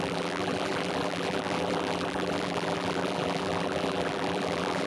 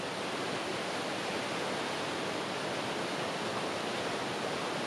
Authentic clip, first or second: second